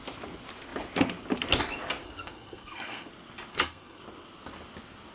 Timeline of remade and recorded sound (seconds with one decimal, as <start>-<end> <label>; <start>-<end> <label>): 0.0-2.0 recorded; 2.0-3.1 remade; 3.1-3.5 recorded; 3.5-4.0 remade; 4.0-5.1 recorded